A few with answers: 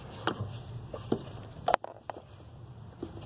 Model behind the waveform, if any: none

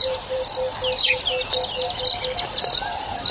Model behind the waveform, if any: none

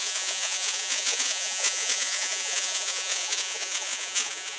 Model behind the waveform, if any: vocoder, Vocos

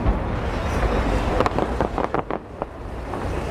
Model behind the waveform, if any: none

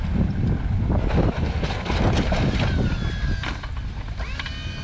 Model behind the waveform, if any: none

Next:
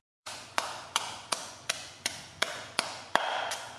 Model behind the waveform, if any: vocoder, Vocos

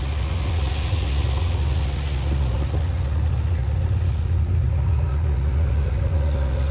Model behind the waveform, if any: vocoder, Vocos